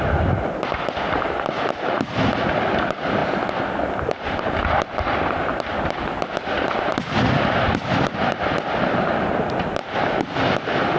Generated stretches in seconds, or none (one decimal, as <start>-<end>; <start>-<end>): none